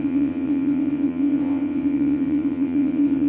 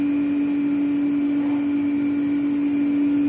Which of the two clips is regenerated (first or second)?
first